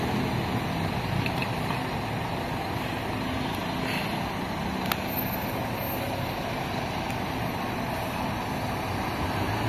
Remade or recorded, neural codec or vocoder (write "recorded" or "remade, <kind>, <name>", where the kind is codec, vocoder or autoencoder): recorded